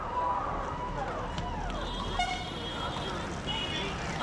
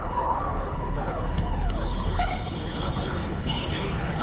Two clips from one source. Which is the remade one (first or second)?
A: second